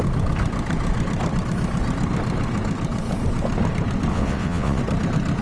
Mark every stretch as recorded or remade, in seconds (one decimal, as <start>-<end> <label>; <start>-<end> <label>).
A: 0.0-4.1 recorded; 4.1-4.8 remade; 4.8-5.4 recorded